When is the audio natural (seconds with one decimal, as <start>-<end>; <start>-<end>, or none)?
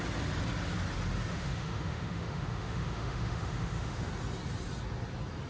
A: 0.0-1.3; 4.1-5.5